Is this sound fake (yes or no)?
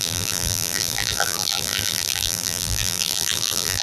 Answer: yes